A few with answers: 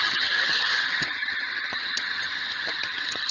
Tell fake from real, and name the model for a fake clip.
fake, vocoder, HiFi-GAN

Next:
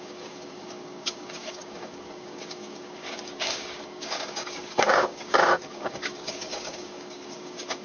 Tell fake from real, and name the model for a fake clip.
fake, codec, DAC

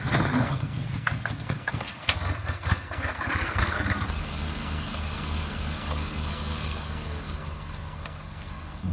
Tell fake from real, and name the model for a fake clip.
fake, codec, SNAC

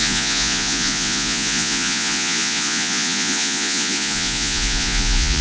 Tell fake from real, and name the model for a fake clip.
fake, vocoder, Vocos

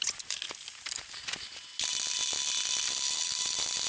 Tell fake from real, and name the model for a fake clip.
real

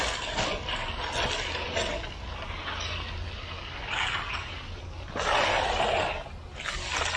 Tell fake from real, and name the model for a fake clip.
real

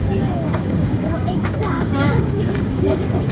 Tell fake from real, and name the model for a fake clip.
fake, codec, DAC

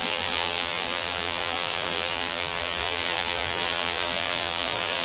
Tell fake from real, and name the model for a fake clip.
fake, vocoder, BigVGAN v2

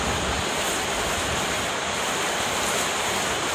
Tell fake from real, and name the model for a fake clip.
real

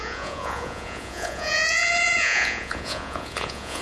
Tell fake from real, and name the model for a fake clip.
fake, vocoder, Vocos